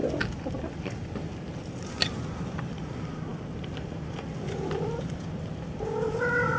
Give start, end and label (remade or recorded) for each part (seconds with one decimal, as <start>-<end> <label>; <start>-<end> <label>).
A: 0.0-6.6 recorded